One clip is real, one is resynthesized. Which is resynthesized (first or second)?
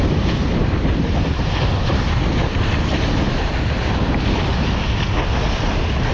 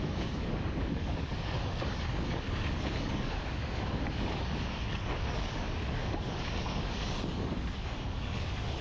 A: second